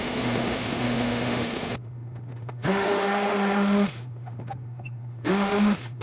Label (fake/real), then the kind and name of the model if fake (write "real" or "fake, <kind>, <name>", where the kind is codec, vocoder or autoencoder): fake, autoencoder, DAC-VAE